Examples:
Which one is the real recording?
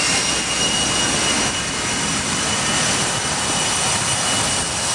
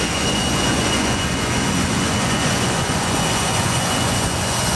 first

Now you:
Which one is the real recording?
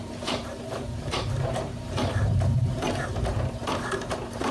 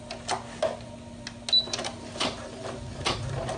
second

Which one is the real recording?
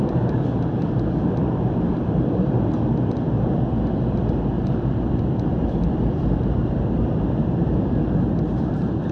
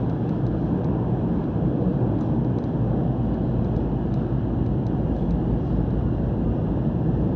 second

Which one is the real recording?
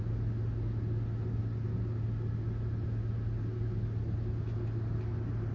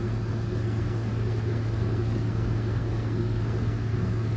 first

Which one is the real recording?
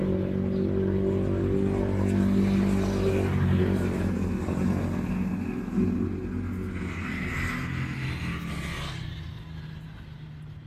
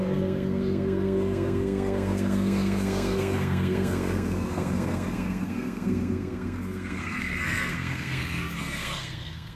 first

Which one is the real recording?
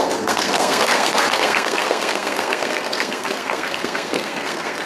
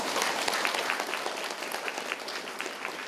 second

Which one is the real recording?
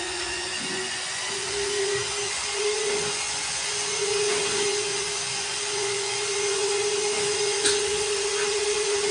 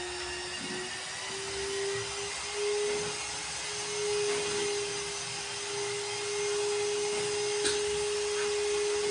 second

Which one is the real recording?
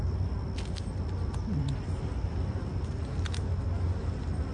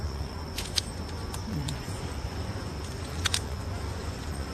first